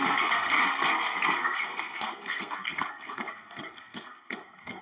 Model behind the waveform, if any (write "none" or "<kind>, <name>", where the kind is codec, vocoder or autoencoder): codec, SNAC